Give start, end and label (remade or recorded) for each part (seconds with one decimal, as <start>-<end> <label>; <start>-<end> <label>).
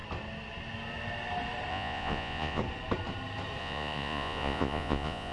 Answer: 0.0-1.7 recorded; 1.7-2.6 remade; 2.6-3.6 recorded; 3.6-5.3 remade